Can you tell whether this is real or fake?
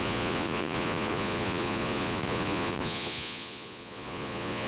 fake